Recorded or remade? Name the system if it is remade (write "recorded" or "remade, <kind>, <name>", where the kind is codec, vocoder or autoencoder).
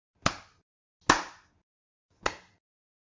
recorded